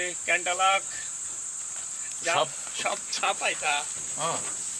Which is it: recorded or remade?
remade